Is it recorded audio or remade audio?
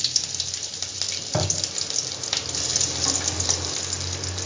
recorded